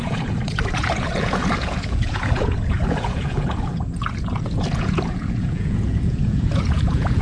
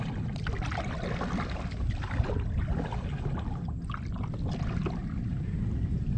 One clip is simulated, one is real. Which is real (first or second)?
second